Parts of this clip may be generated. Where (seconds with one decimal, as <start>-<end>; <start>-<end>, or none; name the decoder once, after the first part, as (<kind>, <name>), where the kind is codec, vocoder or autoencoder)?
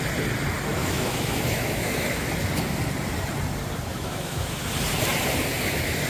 0.8-2.3 (autoencoder, DAC-VAE); 3.9-4.7